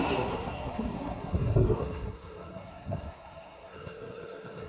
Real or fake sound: fake